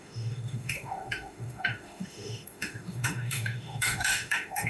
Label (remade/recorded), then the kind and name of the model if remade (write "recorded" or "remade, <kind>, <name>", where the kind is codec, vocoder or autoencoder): remade, autoencoder, DAC-VAE